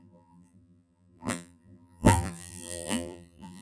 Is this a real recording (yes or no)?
no